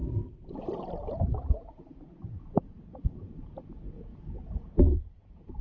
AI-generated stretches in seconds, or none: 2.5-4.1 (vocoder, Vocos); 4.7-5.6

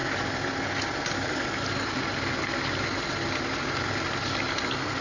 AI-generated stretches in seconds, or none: none

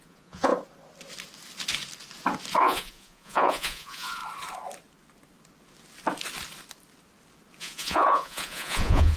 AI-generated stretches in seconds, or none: 0.0-0.5 (vocoder, Vocos); 2.6-4.2; 7.6-9.2

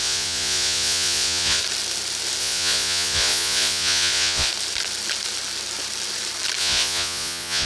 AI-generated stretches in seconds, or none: 0.0-1.6 (vocoder, Vocos); 2.4-4.5; 6.6-7.7